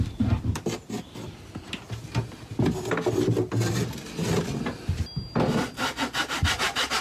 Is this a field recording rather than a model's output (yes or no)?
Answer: yes